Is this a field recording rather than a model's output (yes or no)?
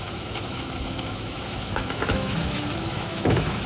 no